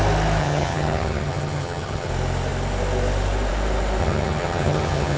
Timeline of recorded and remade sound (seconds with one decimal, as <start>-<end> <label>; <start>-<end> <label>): 0.0-0.4 recorded; 0.4-2.1 remade; 2.1-4.0 recorded; 4.0-5.2 remade